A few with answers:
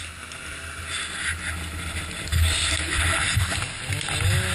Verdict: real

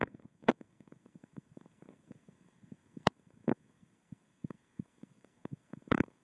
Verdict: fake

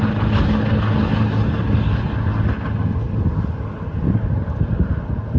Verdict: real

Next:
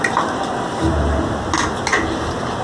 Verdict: real